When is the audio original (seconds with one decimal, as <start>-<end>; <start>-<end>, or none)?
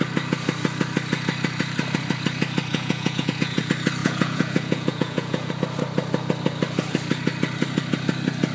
0.0-2.7; 3.6-4.0; 5.5-8.5